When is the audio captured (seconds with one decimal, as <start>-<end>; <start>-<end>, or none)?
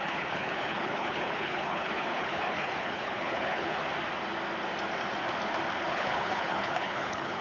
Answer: 3.8-5.9